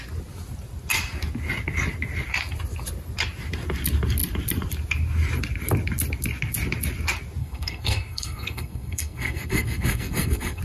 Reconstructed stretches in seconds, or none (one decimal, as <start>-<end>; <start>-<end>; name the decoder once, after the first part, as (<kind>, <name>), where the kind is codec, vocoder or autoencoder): 7.4-10.6 (codec, SNAC)